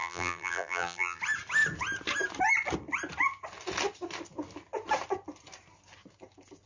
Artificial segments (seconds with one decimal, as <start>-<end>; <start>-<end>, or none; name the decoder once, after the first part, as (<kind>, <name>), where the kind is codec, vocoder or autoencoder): 0.0-1.2 (vocoder, BigVGAN v2)